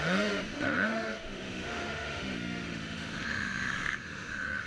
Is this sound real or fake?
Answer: fake